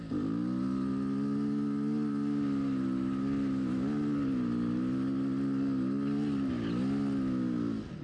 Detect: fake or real real